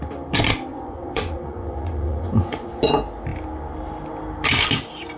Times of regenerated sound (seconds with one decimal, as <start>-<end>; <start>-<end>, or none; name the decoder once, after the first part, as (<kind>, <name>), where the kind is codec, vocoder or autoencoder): 0.7-2.9 (vocoder, Vocos)